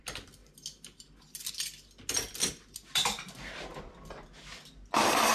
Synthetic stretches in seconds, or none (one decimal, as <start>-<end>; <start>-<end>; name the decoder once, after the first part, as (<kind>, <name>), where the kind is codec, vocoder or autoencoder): none